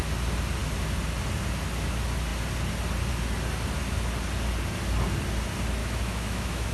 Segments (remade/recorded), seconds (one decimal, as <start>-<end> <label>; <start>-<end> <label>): 0.0-5.8 recorded; 5.8-6.7 remade